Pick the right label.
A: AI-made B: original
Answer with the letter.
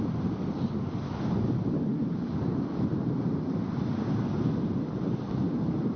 B